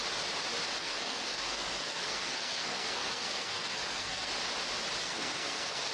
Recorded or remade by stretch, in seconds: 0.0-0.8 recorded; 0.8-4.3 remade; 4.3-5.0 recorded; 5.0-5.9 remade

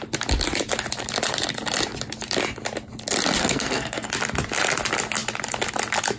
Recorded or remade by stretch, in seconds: 0.0-3.4 recorded; 3.4-4.1 remade; 4.1-6.2 recorded

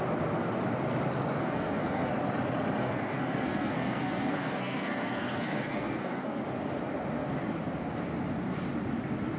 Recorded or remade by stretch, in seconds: 0.0-1.4 recorded; 1.4-2.1 remade; 2.1-2.8 recorded; 2.8-6.4 remade; 6.4-9.4 recorded

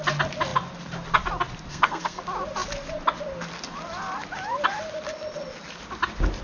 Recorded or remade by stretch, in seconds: 0.0-1.7 recorded; 1.7-2.2 remade; 2.2-6.4 recorded

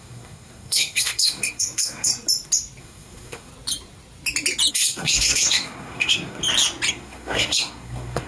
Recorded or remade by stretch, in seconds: 0.0-2.1 remade; 2.1-2.8 recorded; 2.8-3.5 remade; 3.5-4.7 recorded; 4.7-6.4 remade; 6.4-6.9 recorded; 6.9-8.3 remade

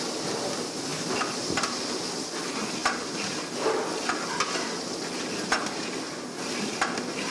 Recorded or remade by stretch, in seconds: 0.0-7.3 recorded